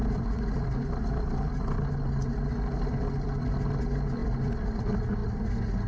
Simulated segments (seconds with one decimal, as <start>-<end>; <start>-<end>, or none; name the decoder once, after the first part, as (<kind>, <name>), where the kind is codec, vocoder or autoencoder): 0.0-3.5 (vocoder, BigVGAN v2); 4.2-4.8